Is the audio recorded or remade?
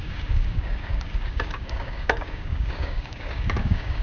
remade